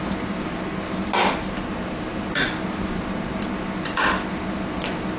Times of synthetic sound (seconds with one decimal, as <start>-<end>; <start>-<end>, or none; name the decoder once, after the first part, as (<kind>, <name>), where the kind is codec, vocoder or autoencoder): none